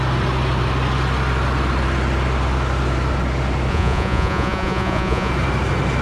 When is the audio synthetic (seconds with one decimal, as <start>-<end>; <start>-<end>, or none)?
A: 3.7-5.3